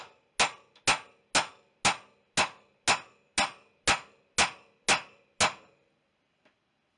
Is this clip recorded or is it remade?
recorded